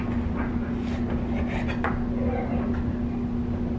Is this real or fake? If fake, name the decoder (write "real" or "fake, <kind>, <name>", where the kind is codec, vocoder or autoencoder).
real